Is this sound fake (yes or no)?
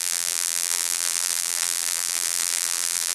yes